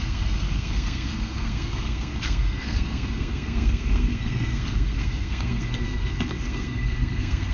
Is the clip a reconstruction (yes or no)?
yes